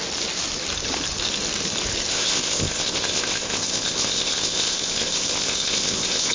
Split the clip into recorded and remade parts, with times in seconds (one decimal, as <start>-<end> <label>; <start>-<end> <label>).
0.0-2.1 recorded; 2.1-6.3 remade